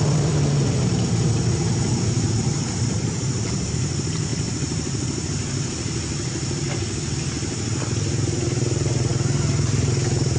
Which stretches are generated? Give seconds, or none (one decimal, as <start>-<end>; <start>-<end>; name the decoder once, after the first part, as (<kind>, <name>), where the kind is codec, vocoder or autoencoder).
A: 0.0-10.4 (vocoder, BigVGAN v2)